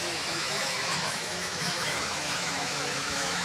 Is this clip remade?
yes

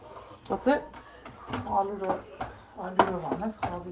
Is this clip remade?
no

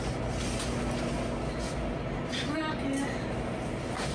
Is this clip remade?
no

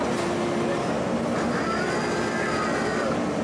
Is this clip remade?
no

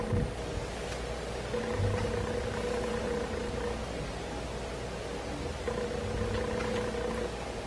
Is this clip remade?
no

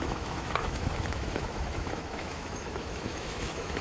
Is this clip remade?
yes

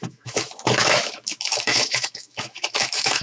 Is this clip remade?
yes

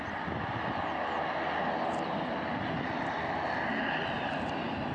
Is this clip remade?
no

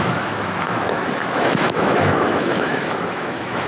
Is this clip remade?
yes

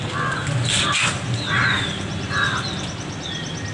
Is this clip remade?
no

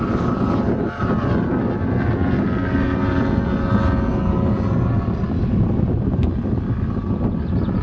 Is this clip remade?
no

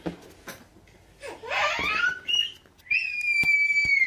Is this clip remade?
no